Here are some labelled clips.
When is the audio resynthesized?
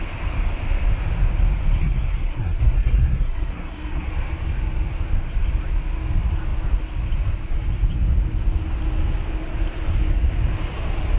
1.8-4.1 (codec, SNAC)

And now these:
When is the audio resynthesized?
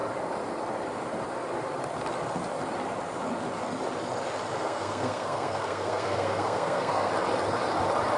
4.5-7.1 (codec, SNAC)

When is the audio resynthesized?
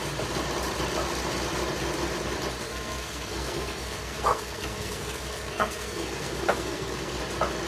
2.6-7.2 (codec, SNAC)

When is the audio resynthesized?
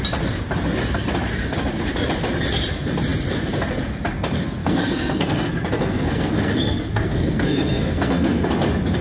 4.6-8.5 (codec, SNAC)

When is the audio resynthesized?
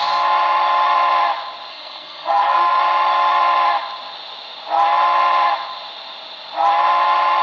1.7-2.8 (codec, SNAC)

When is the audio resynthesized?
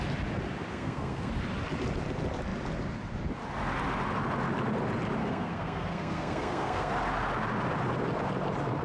0.7-1.3 (codec, SNAC); 5.2-6.9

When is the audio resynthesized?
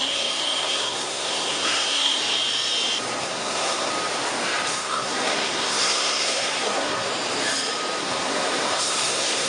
0.0-2.2 (codec, SNAC); 3.2-3.9; 4.7-7.1; 8.0-9.5